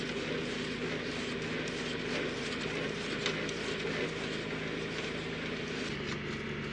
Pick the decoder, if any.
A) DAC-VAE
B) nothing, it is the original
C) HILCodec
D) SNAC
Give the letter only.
B